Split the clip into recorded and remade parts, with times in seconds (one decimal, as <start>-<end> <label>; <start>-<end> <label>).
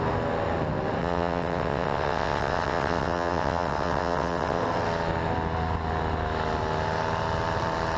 0.0-1.0 recorded; 1.0-4.6 remade; 4.6-8.0 recorded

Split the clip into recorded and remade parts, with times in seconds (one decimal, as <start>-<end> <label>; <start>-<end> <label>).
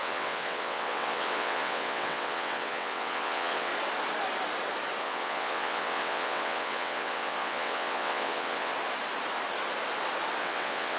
0.0-3.7 remade; 3.7-5.0 recorded; 5.0-8.7 remade; 8.7-10.4 recorded; 10.4-11.0 remade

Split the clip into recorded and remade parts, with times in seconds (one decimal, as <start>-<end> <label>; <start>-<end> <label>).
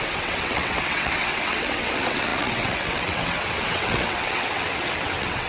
0.0-5.5 remade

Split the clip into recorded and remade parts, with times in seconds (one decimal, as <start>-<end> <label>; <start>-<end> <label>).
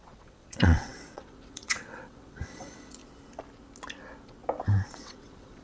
0.0-3.0 remade; 3.0-4.9 recorded; 4.9-5.6 remade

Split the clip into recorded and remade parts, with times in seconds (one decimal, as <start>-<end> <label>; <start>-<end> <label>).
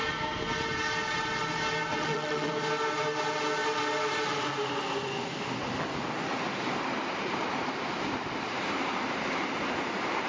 0.0-1.9 recorded; 1.9-2.5 remade; 2.5-10.3 recorded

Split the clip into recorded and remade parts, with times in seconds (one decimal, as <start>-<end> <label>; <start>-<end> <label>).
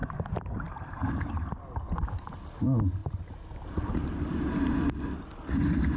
0.0-6.0 recorded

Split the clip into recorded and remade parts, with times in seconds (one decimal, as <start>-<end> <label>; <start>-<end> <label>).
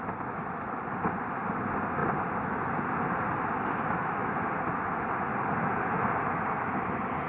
0.0-7.3 recorded